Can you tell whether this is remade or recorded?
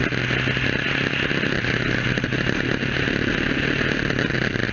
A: recorded